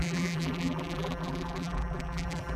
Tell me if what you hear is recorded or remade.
remade